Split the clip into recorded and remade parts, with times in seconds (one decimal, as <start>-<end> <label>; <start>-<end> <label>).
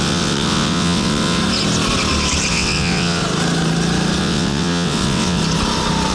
0.0-1.4 remade; 1.4-2.5 recorded; 2.5-3.2 remade; 3.2-4.2 recorded; 4.2-5.4 remade; 5.4-6.1 recorded